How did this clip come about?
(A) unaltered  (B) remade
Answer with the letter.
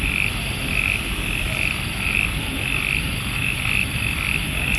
A